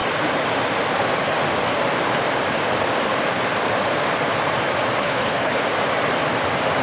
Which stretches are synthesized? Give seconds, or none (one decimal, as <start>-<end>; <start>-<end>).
5.0-5.6